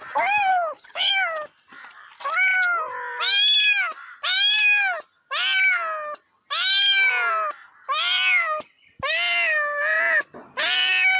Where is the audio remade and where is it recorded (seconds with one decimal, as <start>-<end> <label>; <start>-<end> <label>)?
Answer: 0.0-0.5 recorded; 0.5-1.1 remade; 1.1-11.2 recorded

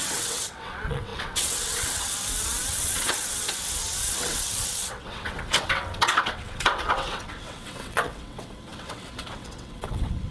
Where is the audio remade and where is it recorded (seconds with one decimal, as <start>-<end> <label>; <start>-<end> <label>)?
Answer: 0.0-10.3 remade